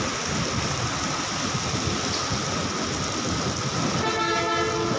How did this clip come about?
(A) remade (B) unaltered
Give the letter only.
B